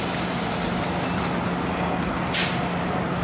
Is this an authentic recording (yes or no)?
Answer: yes